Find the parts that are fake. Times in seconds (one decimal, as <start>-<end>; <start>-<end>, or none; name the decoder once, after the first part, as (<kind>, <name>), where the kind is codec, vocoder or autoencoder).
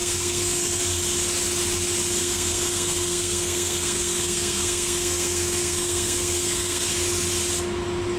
0.0-0.8 (codec, SNAC); 2.2-6.9